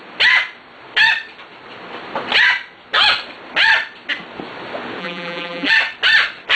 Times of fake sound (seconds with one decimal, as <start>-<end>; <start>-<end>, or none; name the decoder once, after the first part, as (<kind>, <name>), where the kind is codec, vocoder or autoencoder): 5.0-5.7 (vocoder, BigVGAN v2)